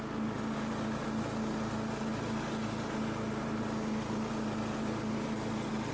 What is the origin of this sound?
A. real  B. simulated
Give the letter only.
A